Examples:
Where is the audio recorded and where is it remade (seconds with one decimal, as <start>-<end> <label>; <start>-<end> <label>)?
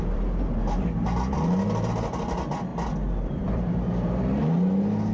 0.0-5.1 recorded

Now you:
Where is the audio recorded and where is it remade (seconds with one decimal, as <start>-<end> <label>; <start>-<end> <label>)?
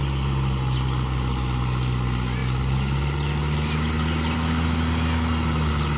0.0-6.0 recorded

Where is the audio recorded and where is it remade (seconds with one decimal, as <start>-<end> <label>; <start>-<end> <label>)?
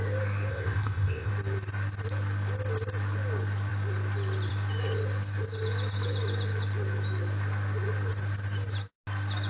0.0-0.5 recorded; 0.5-1.3 remade; 1.3-9.5 recorded